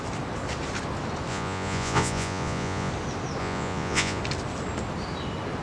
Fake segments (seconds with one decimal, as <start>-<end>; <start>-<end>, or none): 1.3-2.9; 3.4-4.2

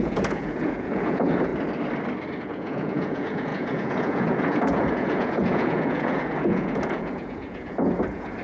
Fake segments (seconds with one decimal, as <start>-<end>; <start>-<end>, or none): 0.0-1.5; 2.4-8.4

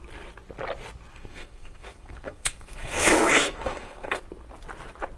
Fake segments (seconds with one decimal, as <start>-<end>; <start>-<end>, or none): 1.1-4.2

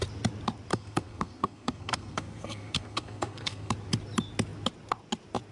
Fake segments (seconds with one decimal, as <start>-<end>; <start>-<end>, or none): 0.7-3.7

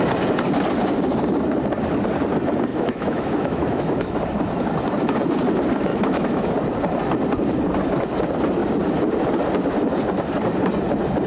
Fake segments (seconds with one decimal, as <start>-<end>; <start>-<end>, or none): 2.7-4.2; 5.9-6.5

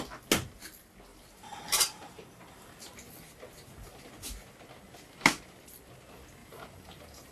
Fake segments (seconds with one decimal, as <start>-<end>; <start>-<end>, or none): 1.1-2.7; 6.4-7.3

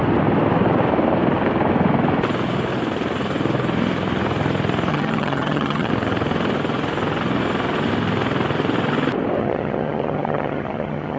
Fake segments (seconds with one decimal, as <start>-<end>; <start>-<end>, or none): 4.9-5.9; 9.4-11.2